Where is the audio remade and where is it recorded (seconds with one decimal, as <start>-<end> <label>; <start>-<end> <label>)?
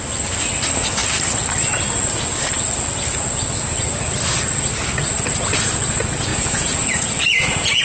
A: 0.0-6.3 recorded; 6.3-7.8 remade